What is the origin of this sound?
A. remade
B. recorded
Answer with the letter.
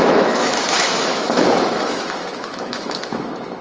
A